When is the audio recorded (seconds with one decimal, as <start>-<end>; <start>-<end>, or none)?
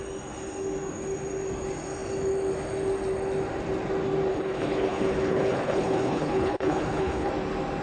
0.0-4.3; 7.3-7.8